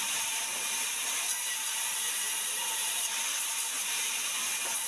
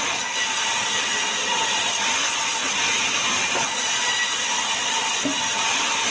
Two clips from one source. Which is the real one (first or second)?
second